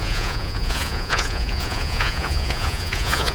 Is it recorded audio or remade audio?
remade